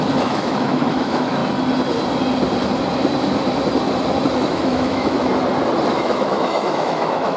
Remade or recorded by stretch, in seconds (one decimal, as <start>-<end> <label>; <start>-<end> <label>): 0.0-1.4 remade; 1.4-4.4 recorded; 4.4-5.3 remade; 5.3-5.9 recorded; 5.9-7.4 remade